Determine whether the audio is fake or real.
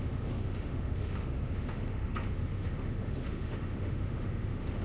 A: fake